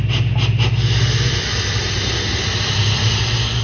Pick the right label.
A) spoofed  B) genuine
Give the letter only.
B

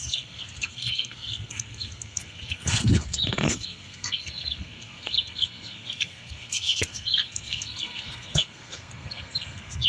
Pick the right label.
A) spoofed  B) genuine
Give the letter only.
A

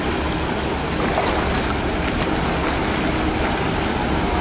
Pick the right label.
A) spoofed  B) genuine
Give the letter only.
B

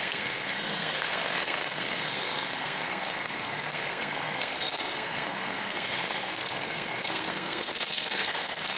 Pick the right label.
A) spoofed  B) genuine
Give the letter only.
A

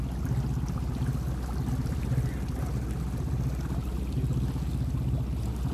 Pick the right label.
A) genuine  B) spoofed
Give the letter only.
A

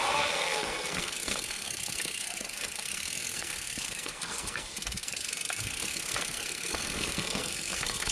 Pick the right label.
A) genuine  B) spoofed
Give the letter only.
B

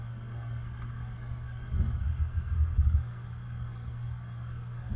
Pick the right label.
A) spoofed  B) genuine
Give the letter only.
A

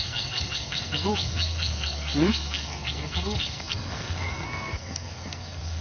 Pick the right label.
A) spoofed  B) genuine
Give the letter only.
A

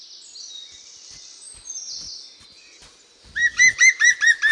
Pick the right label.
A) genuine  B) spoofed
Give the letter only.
A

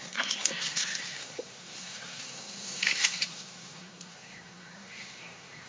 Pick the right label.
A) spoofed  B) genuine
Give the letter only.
A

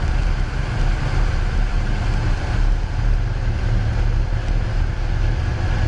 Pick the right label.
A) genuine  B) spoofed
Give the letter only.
A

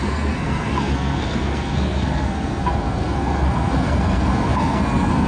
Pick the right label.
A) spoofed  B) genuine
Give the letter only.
A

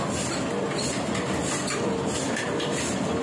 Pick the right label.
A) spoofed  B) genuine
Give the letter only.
B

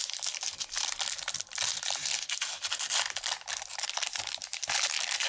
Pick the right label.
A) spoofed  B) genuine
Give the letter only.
B